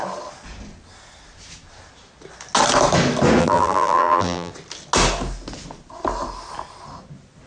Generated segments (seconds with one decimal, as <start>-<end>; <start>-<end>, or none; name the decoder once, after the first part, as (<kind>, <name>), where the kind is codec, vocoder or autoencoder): 3.4-4.5 (vocoder, BigVGAN v2)